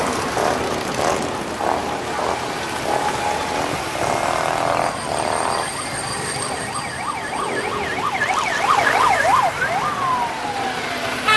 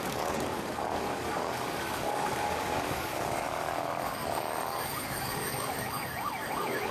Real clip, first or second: first